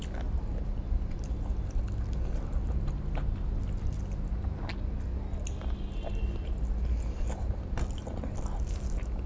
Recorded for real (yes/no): yes